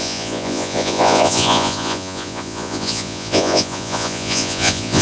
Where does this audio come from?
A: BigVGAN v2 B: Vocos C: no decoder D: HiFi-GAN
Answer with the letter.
B